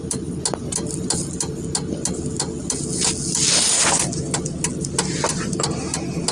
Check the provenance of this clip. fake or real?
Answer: real